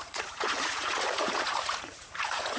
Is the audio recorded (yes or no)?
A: no